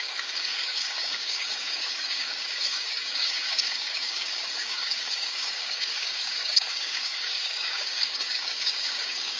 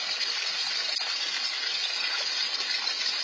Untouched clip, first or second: second